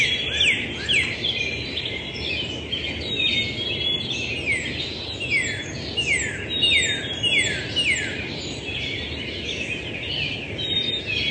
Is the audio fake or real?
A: real